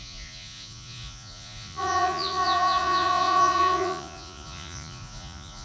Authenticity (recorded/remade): remade